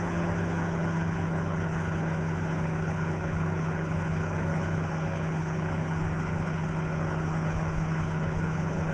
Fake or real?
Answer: fake